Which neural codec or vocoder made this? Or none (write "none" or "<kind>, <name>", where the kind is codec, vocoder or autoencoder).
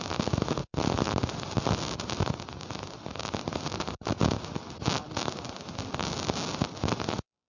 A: none